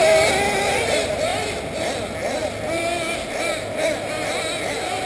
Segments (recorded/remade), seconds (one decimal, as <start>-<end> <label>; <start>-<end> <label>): 0.0-5.1 recorded